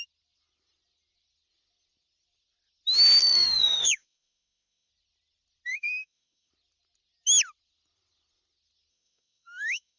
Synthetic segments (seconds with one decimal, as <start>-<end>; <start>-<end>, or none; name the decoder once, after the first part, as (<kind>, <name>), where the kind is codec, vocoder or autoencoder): 3.2-4.9 (autoencoder, DAC-VAE); 5.7-6.5; 8.9-10.0